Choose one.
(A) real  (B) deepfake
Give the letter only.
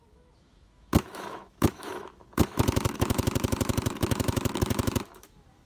B